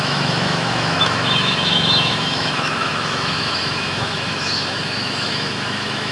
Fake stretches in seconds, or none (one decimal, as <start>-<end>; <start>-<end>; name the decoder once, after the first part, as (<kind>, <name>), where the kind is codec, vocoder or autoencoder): 0.0-6.1 (autoencoder, DAC-VAE)